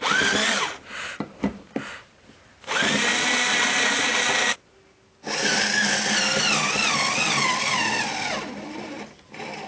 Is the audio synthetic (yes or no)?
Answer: no